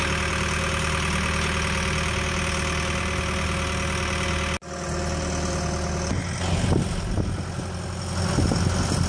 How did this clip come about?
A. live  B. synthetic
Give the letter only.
A